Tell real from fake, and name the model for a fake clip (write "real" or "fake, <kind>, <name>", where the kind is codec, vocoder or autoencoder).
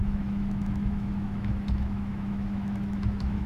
fake, autoencoder, DAC-VAE